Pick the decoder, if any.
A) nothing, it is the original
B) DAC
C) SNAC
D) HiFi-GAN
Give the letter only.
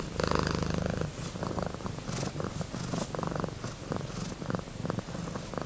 A